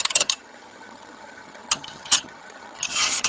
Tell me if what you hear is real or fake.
fake